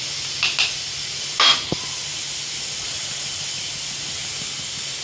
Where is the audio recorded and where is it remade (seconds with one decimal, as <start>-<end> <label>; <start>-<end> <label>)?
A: 0.0-5.0 recorded